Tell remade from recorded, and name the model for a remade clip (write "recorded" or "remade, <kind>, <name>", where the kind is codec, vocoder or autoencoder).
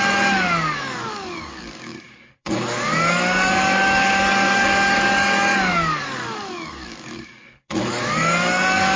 remade, codec, DAC